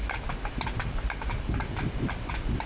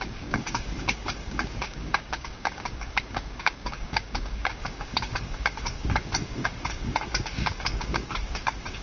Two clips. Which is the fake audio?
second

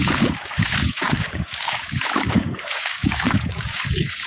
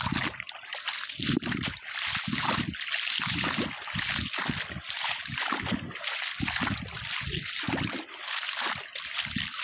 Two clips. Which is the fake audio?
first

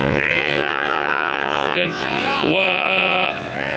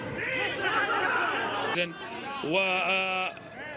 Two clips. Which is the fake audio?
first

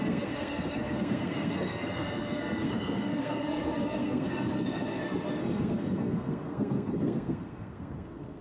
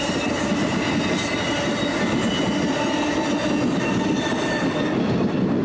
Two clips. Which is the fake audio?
first